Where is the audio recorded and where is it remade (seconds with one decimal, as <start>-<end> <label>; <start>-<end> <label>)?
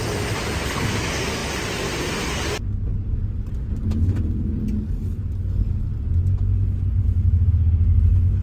0.0-8.4 recorded